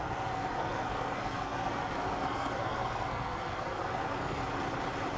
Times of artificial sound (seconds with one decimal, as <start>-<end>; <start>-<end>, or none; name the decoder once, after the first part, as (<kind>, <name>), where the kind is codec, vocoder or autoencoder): 0.0-4.4 (codec, SNAC)